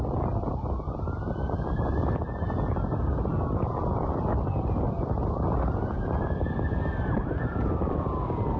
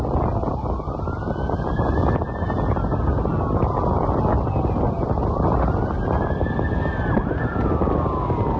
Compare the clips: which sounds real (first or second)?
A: second